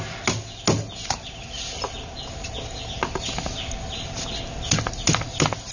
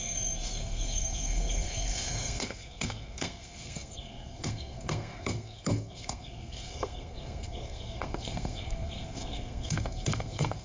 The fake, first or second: second